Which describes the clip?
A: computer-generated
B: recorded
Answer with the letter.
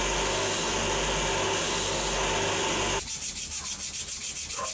B